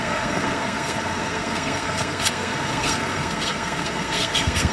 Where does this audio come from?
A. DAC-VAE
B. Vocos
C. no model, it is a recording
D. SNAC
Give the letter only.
D